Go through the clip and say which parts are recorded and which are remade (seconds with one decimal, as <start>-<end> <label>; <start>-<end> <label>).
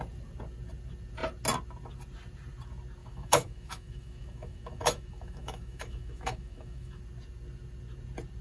0.0-3.0 recorded; 3.0-7.0 remade; 7.0-8.4 recorded